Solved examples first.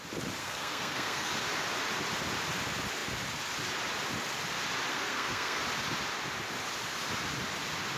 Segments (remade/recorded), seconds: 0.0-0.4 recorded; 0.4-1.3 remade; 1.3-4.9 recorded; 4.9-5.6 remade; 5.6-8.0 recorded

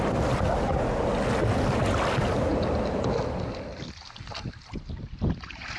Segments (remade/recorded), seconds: 0.0-5.8 recorded

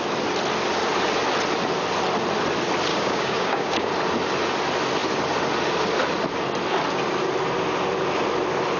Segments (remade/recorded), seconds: 0.0-2.9 recorded; 2.9-3.9 remade; 3.9-8.8 recorded

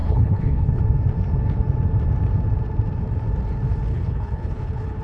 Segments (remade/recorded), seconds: 0.0-0.8 remade; 0.8-3.9 recorded; 3.9-5.0 remade

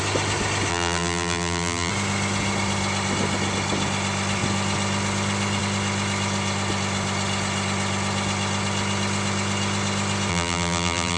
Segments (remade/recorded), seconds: 0.0-0.7 recorded; 0.7-1.9 remade; 1.9-10.3 recorded; 10.3-11.2 remade

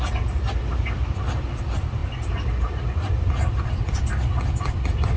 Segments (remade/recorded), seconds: 0.0-5.2 recorded

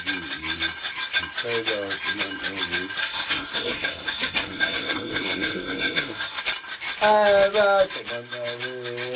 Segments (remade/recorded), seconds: 0.0-3.0 recorded; 3.0-6.4 remade; 6.4-9.2 recorded